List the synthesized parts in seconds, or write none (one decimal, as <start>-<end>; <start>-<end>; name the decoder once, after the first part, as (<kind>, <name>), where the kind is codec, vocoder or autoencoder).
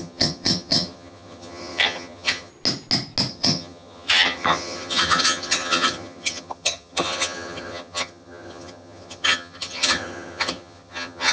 0.0-2.5 (vocoder, HiFi-GAN); 3.3-11.3